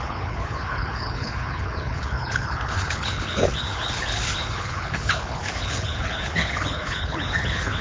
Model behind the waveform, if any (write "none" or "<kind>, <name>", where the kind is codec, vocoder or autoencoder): codec, HILCodec